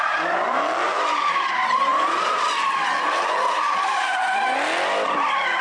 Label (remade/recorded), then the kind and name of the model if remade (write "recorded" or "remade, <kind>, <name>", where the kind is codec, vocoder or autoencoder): recorded